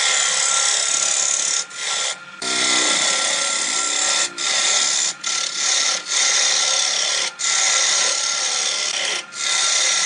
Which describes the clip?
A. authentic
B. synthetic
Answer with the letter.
A